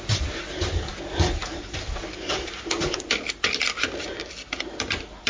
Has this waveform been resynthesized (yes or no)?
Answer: no